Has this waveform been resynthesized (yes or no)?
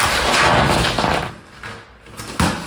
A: no